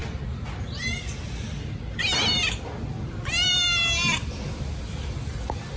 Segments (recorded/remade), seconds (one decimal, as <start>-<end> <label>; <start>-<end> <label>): 0.0-5.8 recorded